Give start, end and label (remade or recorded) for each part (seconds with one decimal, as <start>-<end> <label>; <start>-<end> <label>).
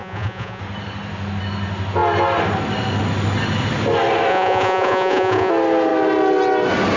0.0-0.6 remade; 0.6-4.3 recorded; 4.3-5.5 remade; 5.5-7.0 recorded